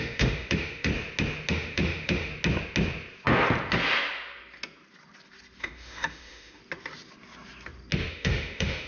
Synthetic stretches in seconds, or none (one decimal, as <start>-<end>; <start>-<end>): 0.0-0.9; 1.5-2.3; 5.6-6.6; 8.1-8.9